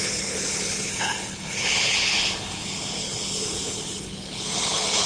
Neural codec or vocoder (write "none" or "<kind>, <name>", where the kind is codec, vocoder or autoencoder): codec, HILCodec